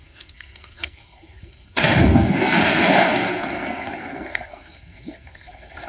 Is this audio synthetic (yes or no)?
yes